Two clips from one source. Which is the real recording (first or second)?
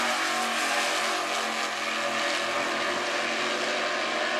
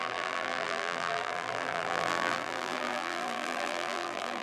first